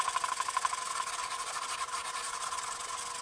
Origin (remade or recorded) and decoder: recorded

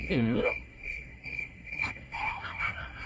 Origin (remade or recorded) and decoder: remade, codec, SNAC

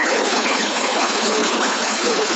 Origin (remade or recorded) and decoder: remade, codec, HILCodec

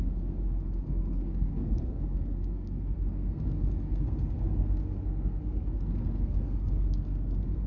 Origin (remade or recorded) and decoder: remade, codec, SNAC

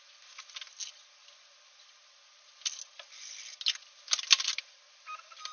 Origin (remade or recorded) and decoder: recorded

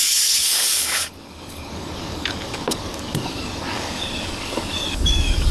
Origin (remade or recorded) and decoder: remade, codec, DAC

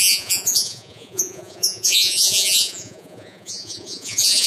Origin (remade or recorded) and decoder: remade, vocoder, Vocos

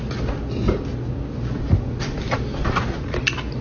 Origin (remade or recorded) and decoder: recorded